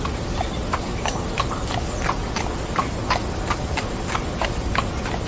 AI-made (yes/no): no